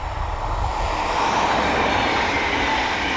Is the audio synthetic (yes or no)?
no